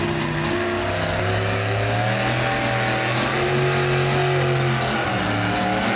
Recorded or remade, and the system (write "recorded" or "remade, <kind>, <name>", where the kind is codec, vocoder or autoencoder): recorded